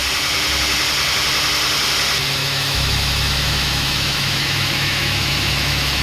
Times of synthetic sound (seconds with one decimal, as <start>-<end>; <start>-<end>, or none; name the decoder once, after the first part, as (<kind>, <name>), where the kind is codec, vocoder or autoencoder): 2.4-6.0 (autoencoder, DAC-VAE)